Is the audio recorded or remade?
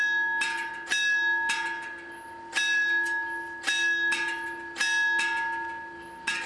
recorded